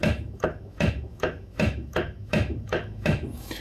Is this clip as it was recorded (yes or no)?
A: no